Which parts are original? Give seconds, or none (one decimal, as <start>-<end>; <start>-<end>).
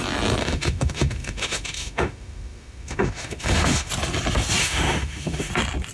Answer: 0.0-0.4; 3.9-4.6; 5.5-5.9